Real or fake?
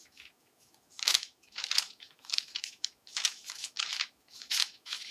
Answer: fake